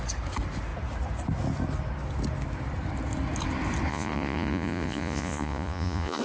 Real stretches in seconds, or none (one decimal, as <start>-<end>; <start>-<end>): 0.0-3.9